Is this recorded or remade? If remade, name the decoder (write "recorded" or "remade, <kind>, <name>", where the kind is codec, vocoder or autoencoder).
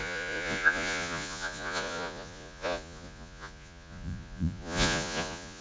remade, vocoder, Vocos